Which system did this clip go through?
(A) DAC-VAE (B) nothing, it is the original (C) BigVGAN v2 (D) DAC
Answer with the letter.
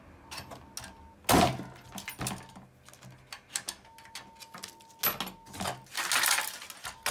B